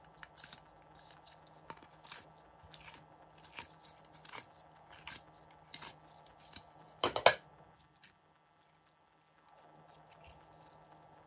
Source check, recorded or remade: recorded